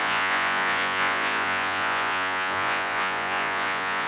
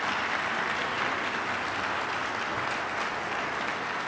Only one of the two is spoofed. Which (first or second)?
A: first